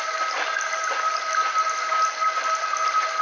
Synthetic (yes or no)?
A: no